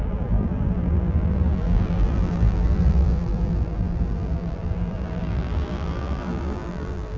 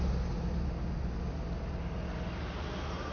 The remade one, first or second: first